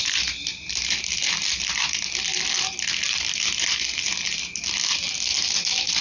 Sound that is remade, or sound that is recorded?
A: recorded